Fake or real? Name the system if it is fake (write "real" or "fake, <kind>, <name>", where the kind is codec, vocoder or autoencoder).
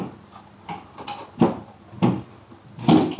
real